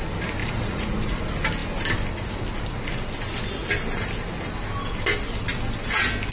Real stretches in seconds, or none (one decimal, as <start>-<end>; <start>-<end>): 0.0-0.4; 1.2-6.3